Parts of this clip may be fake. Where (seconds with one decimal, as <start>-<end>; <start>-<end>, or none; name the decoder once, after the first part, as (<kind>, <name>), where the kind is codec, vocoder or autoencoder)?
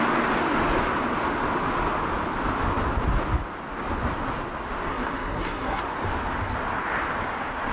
4.9-5.8 (codec, SNAC)